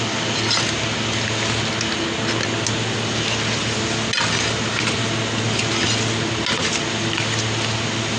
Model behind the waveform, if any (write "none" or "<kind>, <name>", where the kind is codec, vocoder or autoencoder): none